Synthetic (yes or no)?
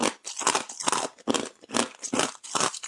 no